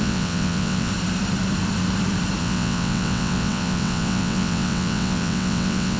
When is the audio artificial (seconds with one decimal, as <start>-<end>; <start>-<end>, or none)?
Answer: 0.0-0.9; 2.4-6.0